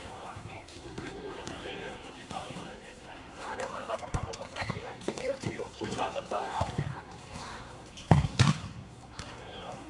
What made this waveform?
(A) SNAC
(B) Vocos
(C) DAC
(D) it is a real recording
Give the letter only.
A